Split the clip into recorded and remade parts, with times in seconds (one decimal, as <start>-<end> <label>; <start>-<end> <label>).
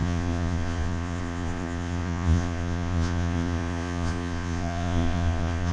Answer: 0.0-5.7 remade